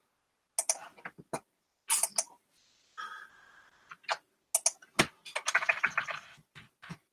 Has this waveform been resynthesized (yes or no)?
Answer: no